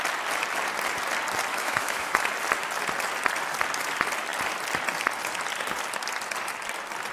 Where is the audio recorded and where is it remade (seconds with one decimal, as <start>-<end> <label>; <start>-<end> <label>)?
0.0-1.5 recorded; 1.5-2.2 remade; 2.2-7.1 recorded